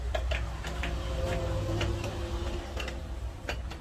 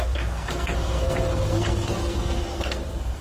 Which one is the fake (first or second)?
second